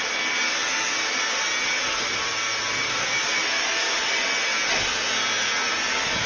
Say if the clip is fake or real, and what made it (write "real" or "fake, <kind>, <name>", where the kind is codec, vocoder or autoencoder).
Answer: real